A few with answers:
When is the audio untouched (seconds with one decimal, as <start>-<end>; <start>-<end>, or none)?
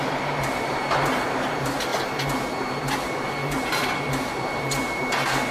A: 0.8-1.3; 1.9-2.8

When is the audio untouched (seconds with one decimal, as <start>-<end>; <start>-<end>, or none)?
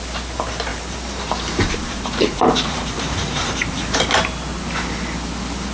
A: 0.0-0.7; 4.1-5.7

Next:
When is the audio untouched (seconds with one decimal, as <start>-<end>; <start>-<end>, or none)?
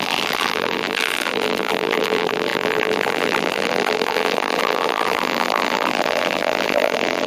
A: none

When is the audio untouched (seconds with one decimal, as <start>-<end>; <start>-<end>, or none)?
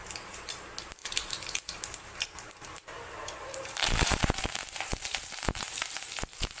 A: 0.0-1.0; 4.4-4.9; 5.7-6.6